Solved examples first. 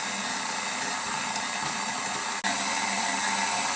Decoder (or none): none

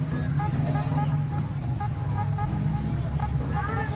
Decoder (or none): none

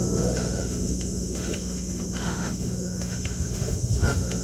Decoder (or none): autoencoder, DAC-VAE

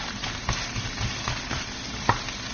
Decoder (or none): none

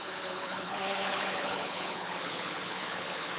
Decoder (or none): codec, HILCodec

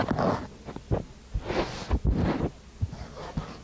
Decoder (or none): none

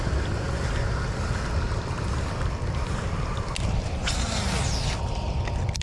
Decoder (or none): none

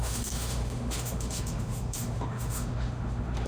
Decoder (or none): autoencoder, DAC-VAE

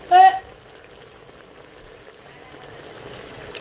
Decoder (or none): none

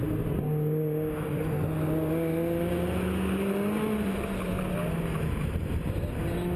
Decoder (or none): none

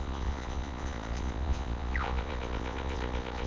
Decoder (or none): vocoder, Vocos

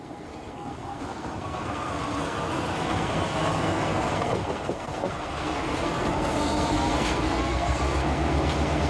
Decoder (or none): codec, SNAC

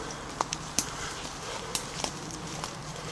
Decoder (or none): none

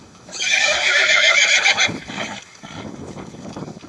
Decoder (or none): codec, DAC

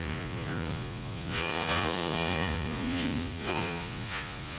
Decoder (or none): vocoder, Vocos